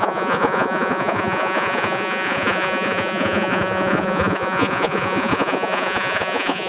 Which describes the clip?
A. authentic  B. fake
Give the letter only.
B